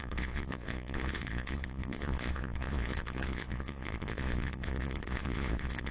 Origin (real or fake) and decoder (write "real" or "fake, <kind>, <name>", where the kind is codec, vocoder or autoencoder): fake, vocoder, Vocos